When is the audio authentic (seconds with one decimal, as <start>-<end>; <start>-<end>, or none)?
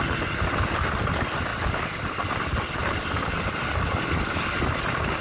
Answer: 0.0-5.2